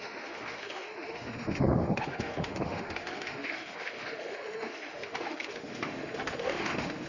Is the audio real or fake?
fake